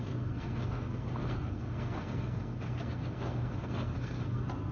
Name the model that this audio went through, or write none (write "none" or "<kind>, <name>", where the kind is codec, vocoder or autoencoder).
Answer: codec, SNAC